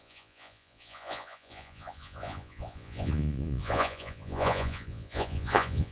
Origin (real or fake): fake